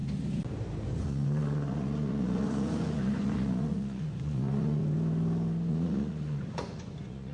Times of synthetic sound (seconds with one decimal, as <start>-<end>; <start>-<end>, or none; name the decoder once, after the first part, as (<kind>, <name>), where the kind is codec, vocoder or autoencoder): 1.0-4.8 (vocoder, Vocos); 5.7-7.3